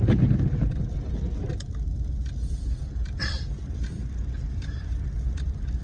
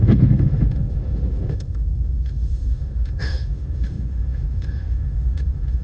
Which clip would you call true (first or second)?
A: first